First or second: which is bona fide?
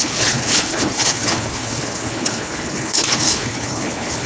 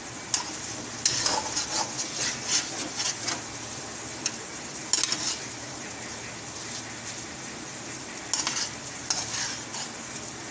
second